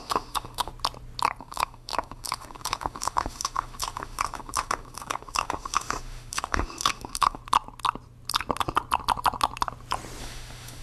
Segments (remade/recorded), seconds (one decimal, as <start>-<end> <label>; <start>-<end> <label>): 0.0-0.7 remade; 0.7-1.4 recorded; 1.4-7.4 remade; 7.4-10.2 recorded; 10.2-10.8 remade